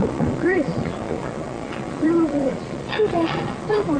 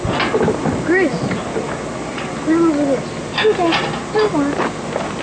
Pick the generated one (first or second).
first